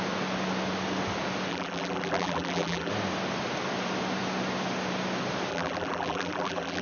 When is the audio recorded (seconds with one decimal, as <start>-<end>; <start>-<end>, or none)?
0.0-1.5; 2.9-5.5